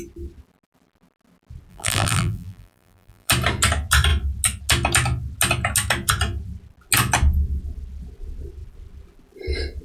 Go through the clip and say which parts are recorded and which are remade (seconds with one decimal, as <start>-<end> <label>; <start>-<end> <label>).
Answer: 0.0-1.7 recorded; 1.7-3.3 remade; 3.3-9.8 recorded